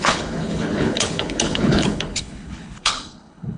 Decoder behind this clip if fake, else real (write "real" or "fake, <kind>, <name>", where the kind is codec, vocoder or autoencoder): fake, codec, HILCodec